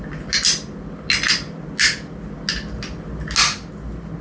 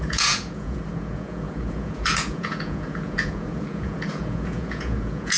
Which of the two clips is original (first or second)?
first